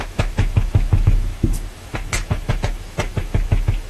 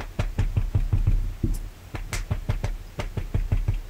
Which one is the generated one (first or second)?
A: first